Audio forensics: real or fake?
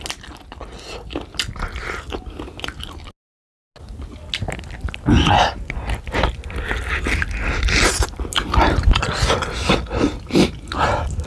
real